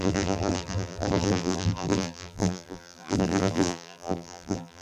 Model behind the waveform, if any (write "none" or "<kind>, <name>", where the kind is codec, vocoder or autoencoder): vocoder, BigVGAN v2